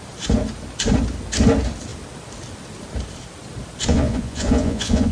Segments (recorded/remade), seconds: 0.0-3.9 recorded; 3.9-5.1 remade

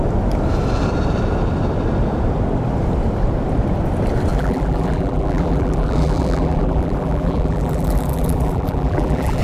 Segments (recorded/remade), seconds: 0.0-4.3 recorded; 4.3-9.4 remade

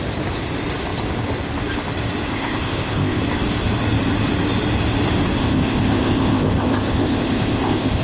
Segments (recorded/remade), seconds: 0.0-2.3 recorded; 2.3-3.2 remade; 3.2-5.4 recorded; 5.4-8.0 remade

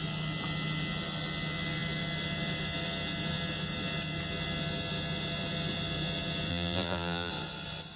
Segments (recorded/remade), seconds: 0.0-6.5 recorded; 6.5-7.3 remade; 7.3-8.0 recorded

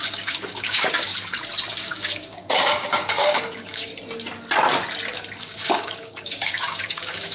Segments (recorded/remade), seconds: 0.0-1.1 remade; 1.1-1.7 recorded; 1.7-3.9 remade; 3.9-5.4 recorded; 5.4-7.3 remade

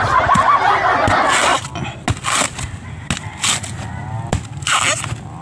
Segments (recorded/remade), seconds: 0.0-5.4 recorded

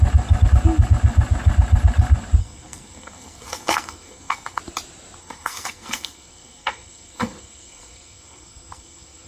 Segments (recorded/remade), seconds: 0.0-2.4 recorded; 2.4-4.6 remade; 4.6-5.2 recorded; 5.2-9.3 remade